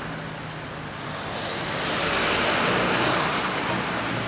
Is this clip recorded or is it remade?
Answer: recorded